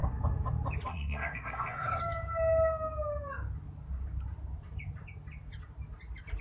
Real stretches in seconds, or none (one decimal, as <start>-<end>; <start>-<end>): 0.0-0.9; 2.0-6.4